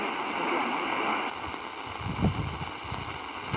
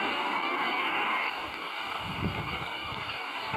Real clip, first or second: first